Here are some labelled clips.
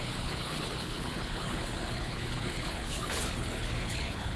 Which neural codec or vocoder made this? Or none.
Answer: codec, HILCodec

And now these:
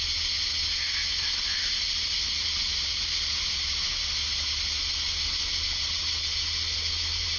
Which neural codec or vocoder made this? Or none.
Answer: none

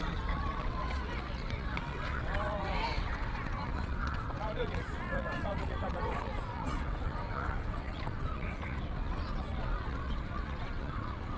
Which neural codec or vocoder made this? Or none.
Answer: vocoder, WaveNeXt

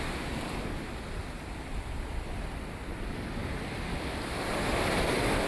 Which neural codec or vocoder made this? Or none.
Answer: none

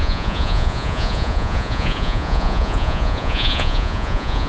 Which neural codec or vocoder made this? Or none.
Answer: vocoder, Vocos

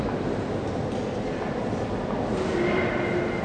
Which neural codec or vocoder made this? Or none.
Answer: none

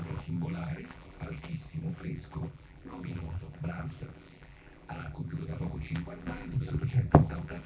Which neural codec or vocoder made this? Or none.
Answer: vocoder, BigVGAN v2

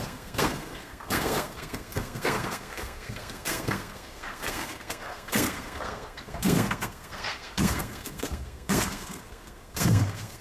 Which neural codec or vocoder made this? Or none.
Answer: codec, SNAC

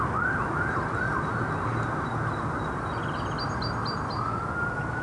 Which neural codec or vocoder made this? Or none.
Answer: none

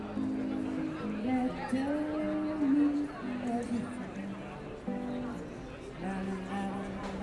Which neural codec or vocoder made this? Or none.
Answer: none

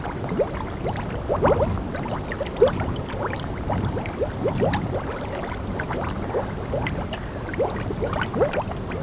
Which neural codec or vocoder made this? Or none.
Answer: none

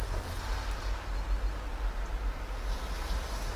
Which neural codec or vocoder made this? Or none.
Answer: none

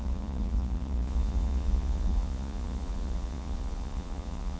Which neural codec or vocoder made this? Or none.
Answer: vocoder, Vocos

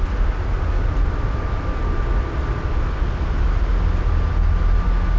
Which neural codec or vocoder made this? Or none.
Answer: none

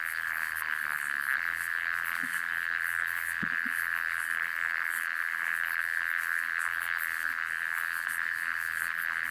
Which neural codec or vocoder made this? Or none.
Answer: codec, SNAC